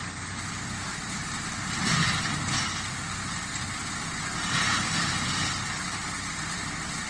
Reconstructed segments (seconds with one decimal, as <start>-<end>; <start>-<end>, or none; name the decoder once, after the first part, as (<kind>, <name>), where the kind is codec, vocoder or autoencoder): 0.9-3.1 (vocoder, BigVGAN v2); 3.8-5.1

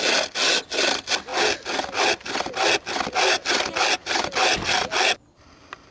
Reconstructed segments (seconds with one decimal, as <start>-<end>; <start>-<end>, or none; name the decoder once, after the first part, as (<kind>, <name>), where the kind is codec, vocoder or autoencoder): 4.0-5.9 (vocoder, BigVGAN v2)